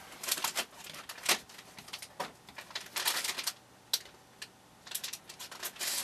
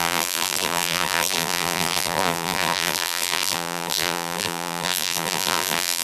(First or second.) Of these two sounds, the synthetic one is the second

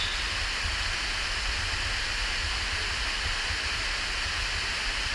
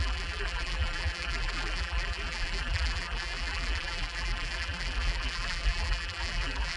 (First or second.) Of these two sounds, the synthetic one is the second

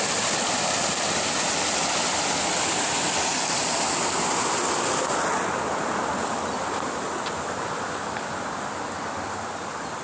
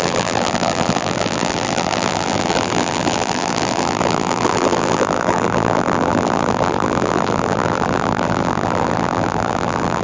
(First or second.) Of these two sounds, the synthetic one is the second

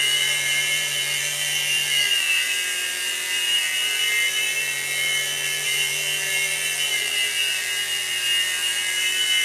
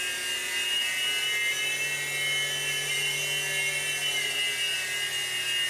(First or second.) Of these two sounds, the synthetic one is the first